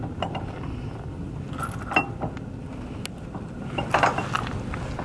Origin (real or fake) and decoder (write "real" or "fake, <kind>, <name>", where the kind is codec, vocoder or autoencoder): real